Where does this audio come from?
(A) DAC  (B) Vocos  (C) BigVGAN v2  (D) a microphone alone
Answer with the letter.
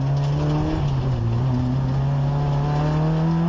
D